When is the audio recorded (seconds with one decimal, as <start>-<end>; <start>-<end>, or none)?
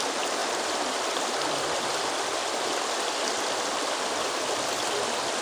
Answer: 0.0-5.4